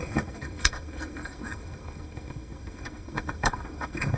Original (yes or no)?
no